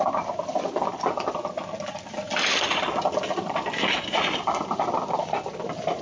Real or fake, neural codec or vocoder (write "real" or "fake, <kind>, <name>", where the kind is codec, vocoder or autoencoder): real